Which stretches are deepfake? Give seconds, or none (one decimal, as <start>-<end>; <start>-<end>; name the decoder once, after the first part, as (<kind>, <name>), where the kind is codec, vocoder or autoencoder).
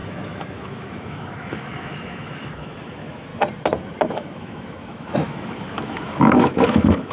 0.0-3.3 (autoencoder, DAC-VAE); 4.1-7.1